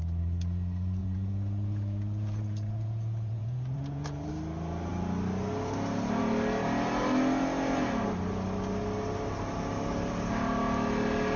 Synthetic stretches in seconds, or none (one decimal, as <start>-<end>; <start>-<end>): 1.0-4.3